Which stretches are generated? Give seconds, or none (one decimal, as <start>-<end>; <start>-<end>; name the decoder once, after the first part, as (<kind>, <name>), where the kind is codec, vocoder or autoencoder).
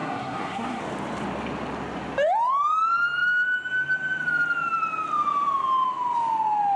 0.0-0.8 (codec, SNAC)